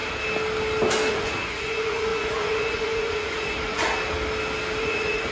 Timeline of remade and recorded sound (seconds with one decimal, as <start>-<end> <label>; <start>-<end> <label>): 0.0-1.1 recorded; 1.1-3.9 remade; 3.9-4.8 recorded; 4.8-5.3 remade